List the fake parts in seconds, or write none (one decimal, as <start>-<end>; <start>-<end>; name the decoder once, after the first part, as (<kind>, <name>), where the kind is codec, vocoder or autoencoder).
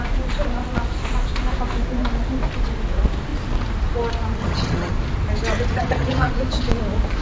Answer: 4.4-4.9 (vocoder, HiFi-GAN); 5.7-6.3